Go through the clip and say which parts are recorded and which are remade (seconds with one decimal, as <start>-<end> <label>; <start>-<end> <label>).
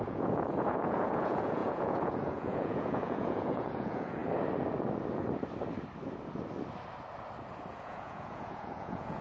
0.0-4.2 remade; 4.2-7.7 recorded; 7.7-9.2 remade